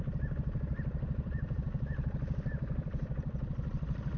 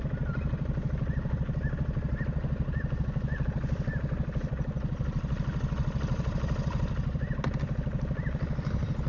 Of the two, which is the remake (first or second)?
first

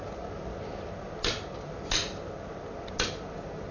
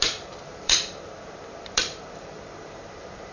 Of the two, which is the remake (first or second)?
second